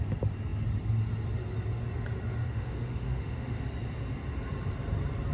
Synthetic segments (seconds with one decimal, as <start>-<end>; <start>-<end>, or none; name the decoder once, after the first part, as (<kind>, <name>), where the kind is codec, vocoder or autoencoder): 2.4-3.6 (autoencoder, DAC-VAE)